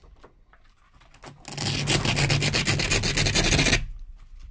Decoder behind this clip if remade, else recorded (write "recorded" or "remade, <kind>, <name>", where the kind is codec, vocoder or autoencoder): recorded